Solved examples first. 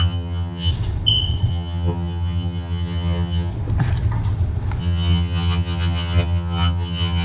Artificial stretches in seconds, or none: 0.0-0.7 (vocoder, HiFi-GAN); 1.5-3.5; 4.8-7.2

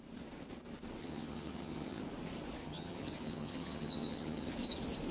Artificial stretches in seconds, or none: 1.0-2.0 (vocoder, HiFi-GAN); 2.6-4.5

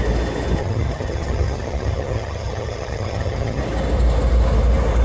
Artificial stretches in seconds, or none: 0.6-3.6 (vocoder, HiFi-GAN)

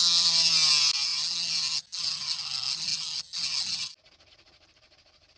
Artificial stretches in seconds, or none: none

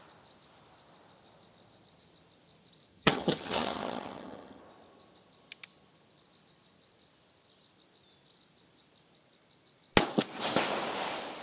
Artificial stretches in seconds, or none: 2.9-4.6 (vocoder, HiFi-GAN)

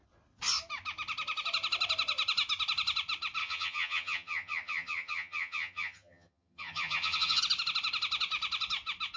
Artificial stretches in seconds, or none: 3.4-7.4 (vocoder, HiFi-GAN)